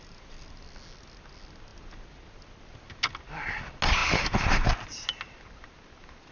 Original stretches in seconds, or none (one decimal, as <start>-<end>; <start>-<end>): 0.0-6.3